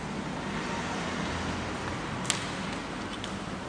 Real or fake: real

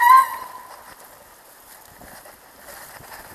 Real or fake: real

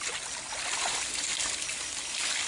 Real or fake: real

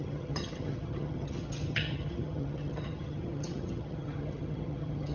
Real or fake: fake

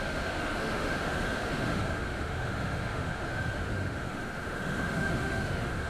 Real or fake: fake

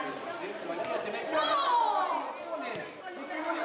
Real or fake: real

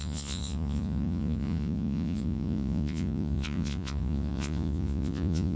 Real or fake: fake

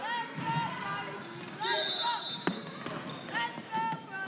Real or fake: real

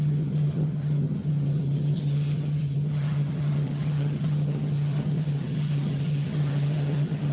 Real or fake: fake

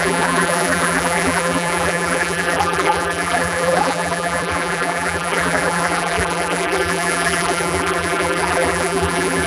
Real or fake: fake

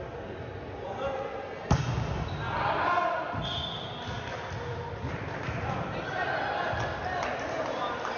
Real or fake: real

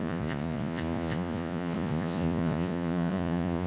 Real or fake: fake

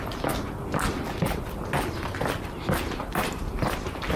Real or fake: real